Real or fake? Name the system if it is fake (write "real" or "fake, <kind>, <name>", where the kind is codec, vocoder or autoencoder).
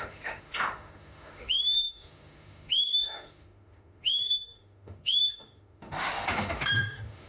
fake, autoencoder, DAC-VAE